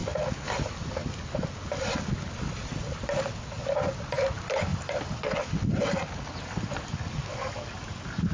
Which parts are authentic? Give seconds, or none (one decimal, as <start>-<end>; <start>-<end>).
0.0-8.3